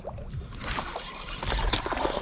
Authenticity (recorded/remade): recorded